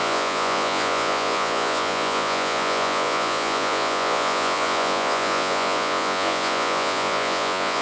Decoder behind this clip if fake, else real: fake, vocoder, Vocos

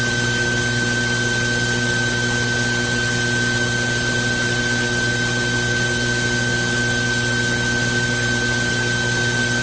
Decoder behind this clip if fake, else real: real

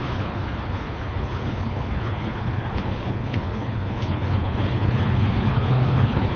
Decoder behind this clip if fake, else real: fake, codec, HILCodec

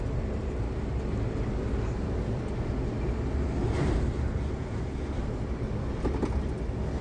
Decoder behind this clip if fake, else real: real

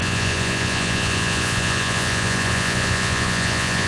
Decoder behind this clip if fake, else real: fake, vocoder, Vocos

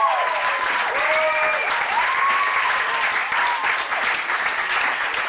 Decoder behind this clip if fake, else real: real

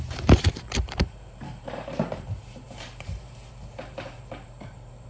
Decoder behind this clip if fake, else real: fake, vocoder, BigVGAN v2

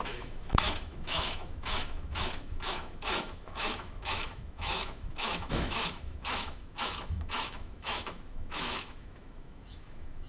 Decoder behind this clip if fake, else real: fake, autoencoder, DAC-VAE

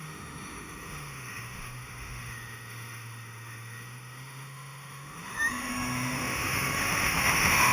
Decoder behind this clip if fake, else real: fake, autoencoder, DAC-VAE